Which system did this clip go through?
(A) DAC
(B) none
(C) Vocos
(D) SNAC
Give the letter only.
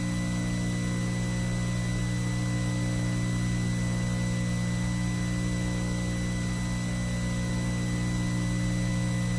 B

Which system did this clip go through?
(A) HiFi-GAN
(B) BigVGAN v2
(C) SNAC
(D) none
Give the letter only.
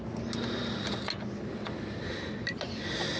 D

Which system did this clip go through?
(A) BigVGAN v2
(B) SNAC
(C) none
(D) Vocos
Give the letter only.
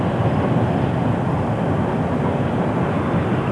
C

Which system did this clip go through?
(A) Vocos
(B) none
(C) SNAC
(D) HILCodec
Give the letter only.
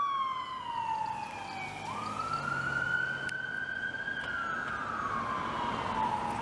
B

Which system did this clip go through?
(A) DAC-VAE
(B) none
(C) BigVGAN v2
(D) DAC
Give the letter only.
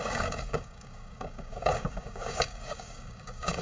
D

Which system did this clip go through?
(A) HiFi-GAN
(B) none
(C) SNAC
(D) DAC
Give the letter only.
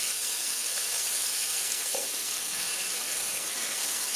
C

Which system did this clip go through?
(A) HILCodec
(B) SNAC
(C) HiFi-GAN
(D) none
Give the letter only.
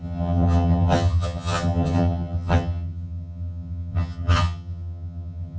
C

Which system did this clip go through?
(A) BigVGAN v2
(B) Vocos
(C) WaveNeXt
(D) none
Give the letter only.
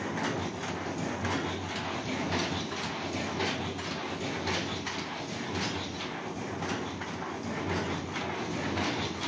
D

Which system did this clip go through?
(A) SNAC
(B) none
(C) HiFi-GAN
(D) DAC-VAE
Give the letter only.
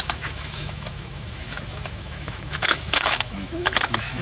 D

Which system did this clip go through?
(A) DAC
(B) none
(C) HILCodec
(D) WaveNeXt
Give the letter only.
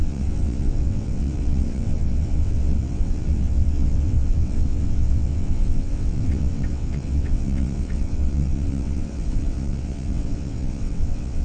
D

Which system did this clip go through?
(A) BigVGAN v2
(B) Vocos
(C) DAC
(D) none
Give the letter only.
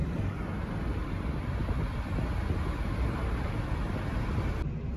D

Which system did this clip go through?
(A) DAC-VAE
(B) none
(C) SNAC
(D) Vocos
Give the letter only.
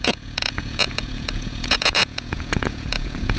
D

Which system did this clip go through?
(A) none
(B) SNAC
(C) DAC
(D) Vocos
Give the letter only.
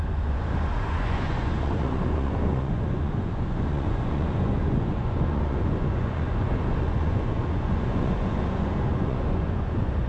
D